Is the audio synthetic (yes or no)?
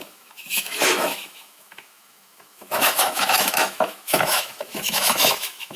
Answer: yes